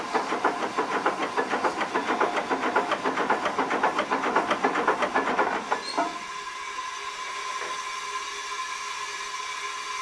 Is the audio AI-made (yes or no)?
no